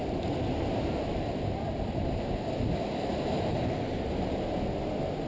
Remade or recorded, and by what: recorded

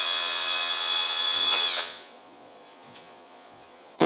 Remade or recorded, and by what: remade, vocoder, Vocos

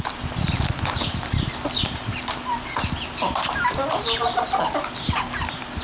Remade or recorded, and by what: recorded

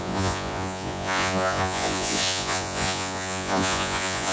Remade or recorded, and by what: remade, vocoder, Vocos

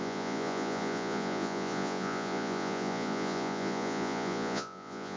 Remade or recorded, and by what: remade, vocoder, Vocos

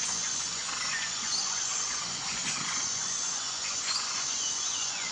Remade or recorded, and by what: remade, vocoder, Vocos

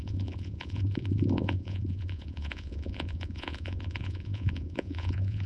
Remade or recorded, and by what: remade, vocoder, Vocos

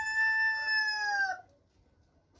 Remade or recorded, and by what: recorded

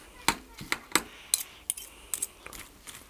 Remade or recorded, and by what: recorded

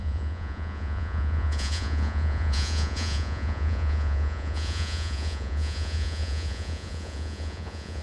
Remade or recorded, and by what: remade, vocoder, Vocos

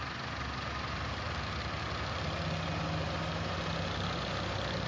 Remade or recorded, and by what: recorded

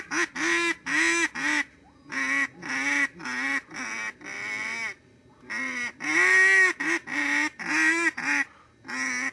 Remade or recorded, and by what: recorded